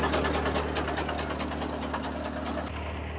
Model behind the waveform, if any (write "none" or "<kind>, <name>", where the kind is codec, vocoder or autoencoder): none